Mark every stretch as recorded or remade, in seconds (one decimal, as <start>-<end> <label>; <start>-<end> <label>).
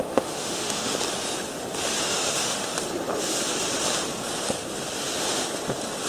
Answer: 0.0-0.9 remade; 0.9-2.0 recorded; 2.0-2.7 remade; 2.7-6.1 recorded